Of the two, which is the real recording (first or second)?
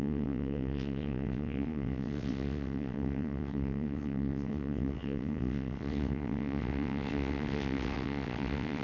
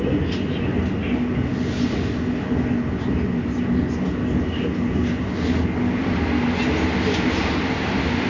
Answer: second